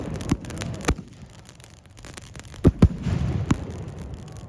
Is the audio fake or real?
fake